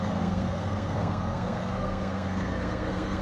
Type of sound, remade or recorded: remade